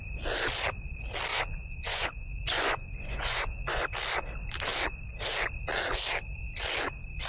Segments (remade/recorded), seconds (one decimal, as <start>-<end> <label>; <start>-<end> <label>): 0.0-1.3 recorded; 1.3-3.8 remade; 3.8-7.3 recorded